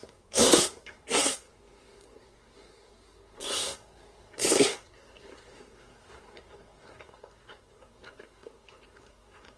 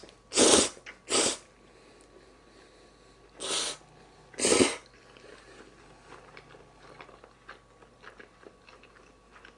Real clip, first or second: second